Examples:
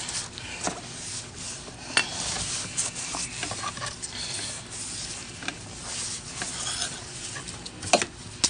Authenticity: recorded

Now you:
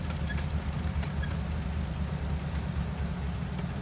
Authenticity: recorded